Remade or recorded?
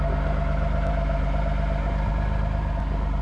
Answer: recorded